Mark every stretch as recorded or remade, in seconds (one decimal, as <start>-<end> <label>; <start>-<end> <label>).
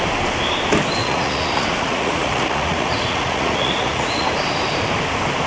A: 0.0-1.0 recorded; 1.0-4.3 remade; 4.3-5.5 recorded